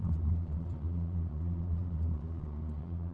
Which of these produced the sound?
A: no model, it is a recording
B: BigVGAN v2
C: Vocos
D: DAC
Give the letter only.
C